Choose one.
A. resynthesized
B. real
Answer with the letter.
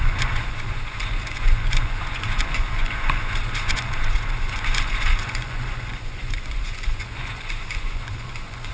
A